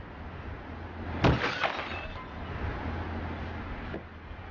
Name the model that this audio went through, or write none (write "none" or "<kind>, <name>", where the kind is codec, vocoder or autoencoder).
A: none